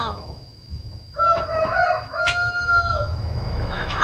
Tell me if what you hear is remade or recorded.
remade